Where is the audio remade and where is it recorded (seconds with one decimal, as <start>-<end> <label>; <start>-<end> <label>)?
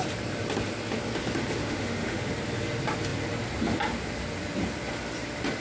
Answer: 0.0-1.6 recorded; 1.6-2.3 remade; 2.3-5.6 recorded